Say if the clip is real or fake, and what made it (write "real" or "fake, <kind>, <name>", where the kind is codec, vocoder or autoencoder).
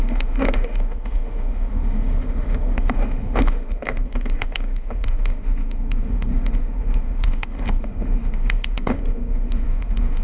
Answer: fake, autoencoder, DAC-VAE